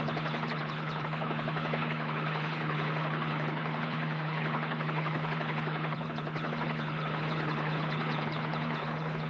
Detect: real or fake fake